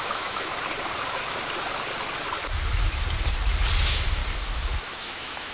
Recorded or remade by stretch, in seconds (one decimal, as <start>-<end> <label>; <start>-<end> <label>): 0.0-0.5 remade; 0.5-3.8 recorded; 3.8-4.2 remade; 4.2-4.8 recorded; 4.8-5.5 remade